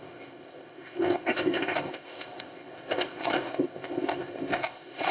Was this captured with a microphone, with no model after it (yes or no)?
no